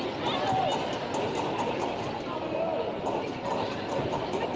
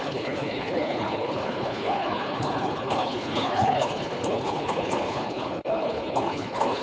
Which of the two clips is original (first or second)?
first